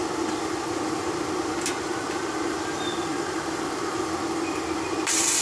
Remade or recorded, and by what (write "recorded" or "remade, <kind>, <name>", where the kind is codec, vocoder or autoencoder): remade, vocoder, BigVGAN v2